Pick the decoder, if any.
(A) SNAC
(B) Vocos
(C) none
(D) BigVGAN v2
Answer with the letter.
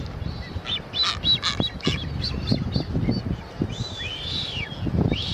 C